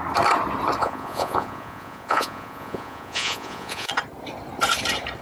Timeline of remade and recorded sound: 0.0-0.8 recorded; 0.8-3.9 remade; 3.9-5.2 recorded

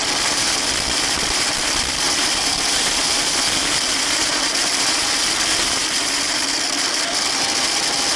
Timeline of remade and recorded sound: 0.0-5.8 remade; 5.8-6.8 recorded; 6.8-8.2 remade

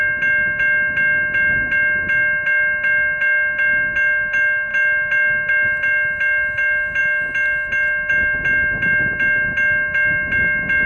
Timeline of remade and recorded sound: 0.0-10.9 recorded

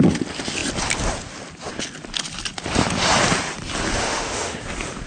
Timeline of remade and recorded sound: 0.0-4.0 recorded; 4.0-4.6 remade; 4.6-5.1 recorded